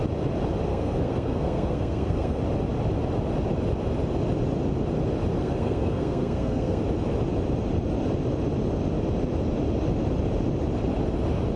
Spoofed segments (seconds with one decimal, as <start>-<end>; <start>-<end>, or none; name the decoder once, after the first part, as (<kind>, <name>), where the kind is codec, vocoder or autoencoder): 0.7-2.4 (codec, SNAC); 5.4-6.8